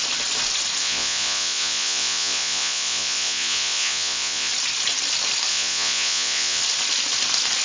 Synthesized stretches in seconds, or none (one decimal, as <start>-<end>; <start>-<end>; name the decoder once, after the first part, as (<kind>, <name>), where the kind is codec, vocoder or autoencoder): 0.8-4.5 (vocoder, Vocos); 5.5-6.6